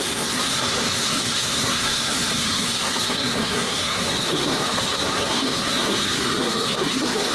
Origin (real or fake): fake